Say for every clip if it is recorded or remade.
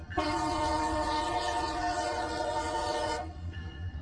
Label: remade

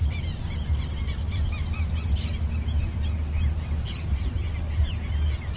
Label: recorded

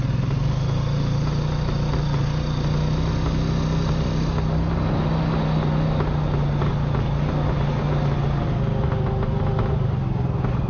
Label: recorded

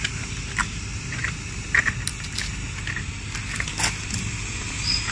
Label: recorded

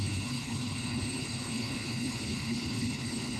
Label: remade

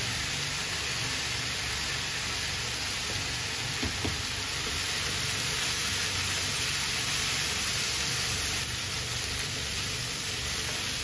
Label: recorded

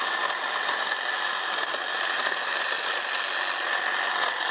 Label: recorded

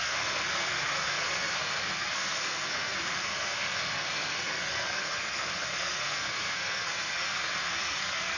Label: remade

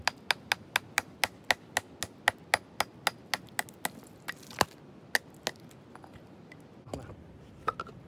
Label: recorded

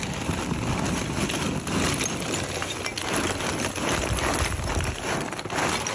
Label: recorded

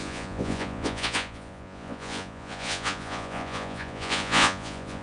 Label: remade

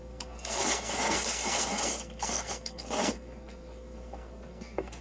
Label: remade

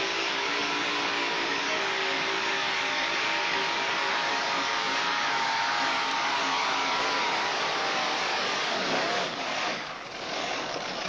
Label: remade